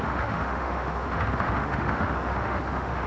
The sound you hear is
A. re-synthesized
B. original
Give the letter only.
A